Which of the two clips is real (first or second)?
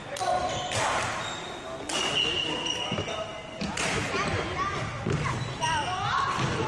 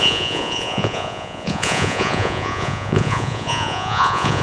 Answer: first